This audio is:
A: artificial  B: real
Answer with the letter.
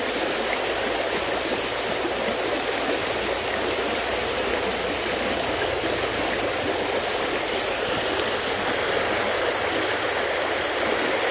B